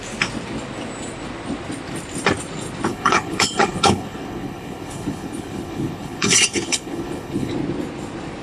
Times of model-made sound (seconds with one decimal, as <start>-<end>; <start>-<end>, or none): 2.9-7.5